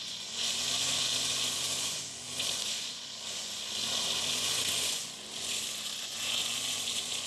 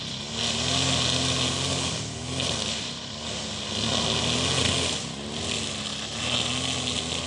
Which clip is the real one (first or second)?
second